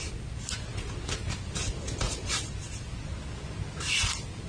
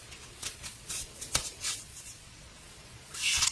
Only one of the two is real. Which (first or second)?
first